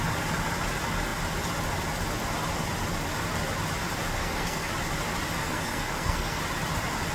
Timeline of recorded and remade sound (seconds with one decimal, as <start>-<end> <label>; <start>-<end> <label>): 0.0-4.1 recorded; 4.1-4.7 remade; 4.7-5.4 recorded; 5.4-6.4 remade; 6.4-7.1 recorded